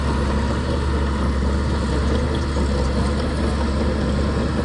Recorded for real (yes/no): yes